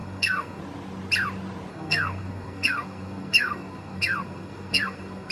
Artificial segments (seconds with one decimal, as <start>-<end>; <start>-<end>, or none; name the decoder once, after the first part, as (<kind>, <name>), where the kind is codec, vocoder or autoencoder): 0.0-0.6 (codec, SNAC); 1.7-5.3